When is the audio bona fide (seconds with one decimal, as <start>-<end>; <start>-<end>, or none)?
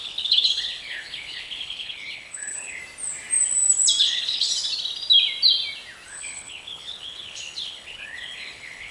2.8-4.0; 4.5-6.1